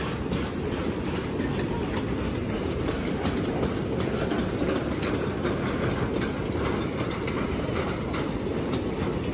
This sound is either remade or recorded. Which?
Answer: recorded